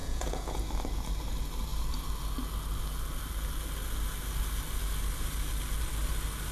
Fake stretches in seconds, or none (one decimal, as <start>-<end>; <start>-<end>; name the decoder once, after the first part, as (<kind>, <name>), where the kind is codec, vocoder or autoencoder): 0.0-0.6 (vocoder, Vocos)

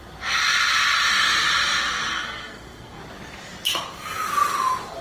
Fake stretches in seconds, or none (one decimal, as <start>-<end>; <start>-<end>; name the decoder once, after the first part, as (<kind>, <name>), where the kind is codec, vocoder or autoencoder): 2.1-3.0 (codec, SNAC)

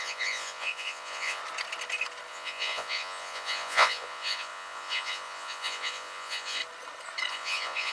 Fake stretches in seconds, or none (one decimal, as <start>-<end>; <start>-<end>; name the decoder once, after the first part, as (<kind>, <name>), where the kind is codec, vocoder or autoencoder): 0.0-1.4 (vocoder, Vocos); 2.3-6.6; 7.3-7.9

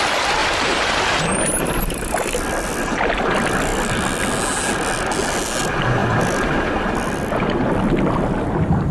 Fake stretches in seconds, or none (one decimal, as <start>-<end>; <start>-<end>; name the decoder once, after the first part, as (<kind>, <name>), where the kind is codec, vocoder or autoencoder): none

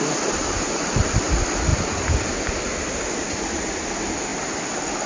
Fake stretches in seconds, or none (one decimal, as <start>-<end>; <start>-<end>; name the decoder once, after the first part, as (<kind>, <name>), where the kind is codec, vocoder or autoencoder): none

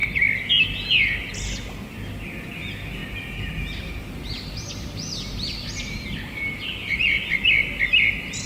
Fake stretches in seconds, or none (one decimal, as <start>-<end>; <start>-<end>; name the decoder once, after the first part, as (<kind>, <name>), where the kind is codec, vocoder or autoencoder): 6.8-7.3 (vocoder, Vocos)

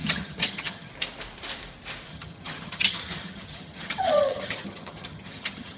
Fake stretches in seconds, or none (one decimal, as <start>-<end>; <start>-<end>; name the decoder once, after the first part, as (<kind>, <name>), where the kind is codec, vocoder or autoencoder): 0.0-0.9 (vocoder, HiFi-GAN); 2.1-5.8

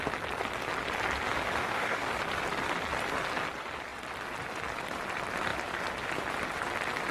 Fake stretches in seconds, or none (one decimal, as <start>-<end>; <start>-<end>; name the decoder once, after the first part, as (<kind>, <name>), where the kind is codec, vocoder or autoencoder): 1.6-2.1 (codec, DAC)